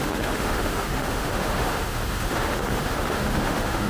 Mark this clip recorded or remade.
remade